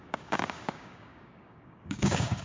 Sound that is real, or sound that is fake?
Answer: fake